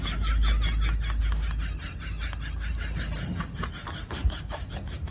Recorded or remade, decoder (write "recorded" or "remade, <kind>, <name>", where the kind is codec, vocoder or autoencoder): recorded